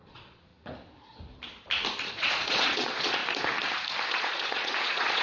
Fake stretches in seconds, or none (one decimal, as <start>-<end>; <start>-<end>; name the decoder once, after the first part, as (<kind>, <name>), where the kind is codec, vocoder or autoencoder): 0.0-0.5 (vocoder, Vocos); 2.1-3.2; 4.1-5.2